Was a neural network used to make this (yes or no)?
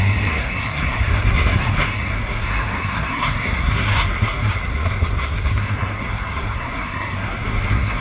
yes